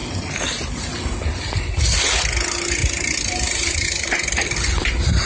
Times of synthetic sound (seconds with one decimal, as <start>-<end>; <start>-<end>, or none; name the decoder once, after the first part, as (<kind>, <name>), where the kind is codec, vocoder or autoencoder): none